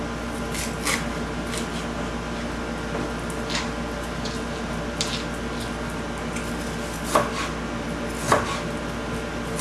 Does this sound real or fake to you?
real